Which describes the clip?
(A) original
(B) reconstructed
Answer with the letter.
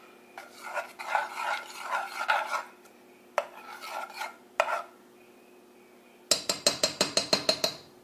A